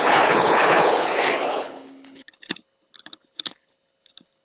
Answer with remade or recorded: remade